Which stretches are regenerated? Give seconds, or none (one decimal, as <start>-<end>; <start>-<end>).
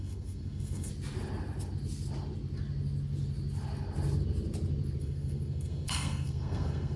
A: 0.0-0.9; 5.0-7.0